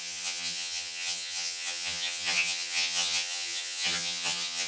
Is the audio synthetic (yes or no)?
yes